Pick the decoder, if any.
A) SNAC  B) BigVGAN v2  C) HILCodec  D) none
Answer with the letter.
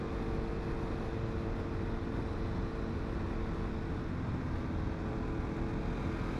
D